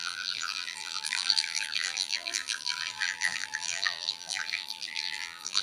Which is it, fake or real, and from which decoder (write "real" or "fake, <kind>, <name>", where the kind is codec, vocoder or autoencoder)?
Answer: fake, vocoder, BigVGAN v2